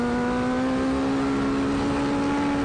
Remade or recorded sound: recorded